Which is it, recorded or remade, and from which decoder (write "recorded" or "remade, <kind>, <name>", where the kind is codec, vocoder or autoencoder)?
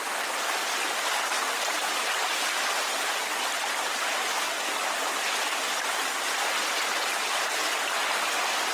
recorded